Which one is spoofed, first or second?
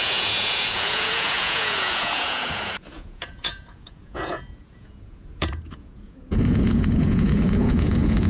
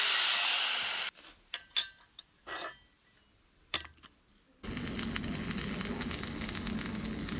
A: first